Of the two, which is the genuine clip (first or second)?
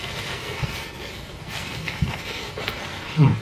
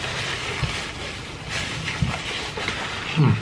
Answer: second